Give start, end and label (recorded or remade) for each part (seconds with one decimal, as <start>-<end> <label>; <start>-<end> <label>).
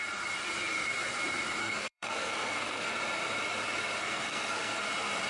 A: 0.0-1.6 recorded; 1.6-2.9 remade; 2.9-4.0 recorded; 4.0-4.8 remade; 4.8-5.3 recorded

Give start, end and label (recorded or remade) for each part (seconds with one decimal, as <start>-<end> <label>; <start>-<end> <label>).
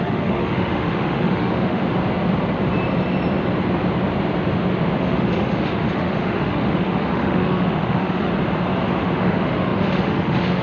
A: 0.0-1.8 remade; 1.8-5.0 recorded; 5.0-8.3 remade; 8.3-8.9 recorded; 8.9-10.6 remade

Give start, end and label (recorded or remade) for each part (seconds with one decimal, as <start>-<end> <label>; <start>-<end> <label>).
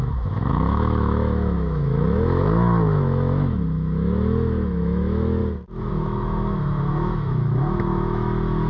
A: 0.0-5.4 remade; 5.4-5.9 recorded; 5.9-8.7 remade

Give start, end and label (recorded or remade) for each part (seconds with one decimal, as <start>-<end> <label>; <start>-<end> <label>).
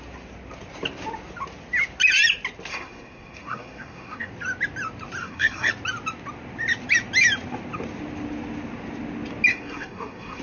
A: 0.0-2.7 recorded; 2.7-4.3 remade; 4.3-5.2 recorded; 5.2-5.7 remade; 5.7-9.5 recorded; 9.5-10.4 remade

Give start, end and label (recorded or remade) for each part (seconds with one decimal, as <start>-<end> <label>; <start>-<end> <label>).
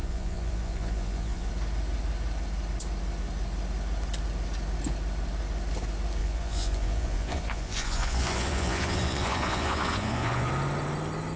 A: 0.0-1.5 remade; 1.5-6.2 recorded; 6.2-10.5 remade; 10.5-11.4 recorded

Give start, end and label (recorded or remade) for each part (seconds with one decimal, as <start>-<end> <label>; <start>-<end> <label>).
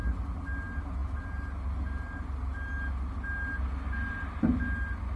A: 0.0-5.2 recorded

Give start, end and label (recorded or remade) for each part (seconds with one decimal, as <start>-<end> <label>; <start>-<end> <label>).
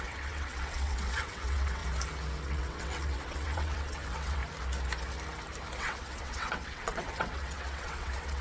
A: 0.0-1.8 remade; 1.8-2.4 recorded; 2.4-4.4 remade; 4.4-5.8 recorded; 5.8-8.4 remade